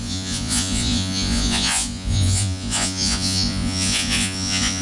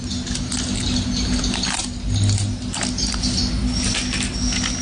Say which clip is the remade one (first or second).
first